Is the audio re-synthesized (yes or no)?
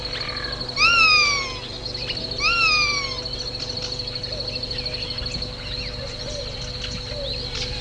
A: no